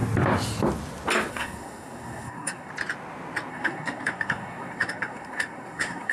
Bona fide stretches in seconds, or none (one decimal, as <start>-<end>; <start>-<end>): 0.0-1.3; 2.7-3.5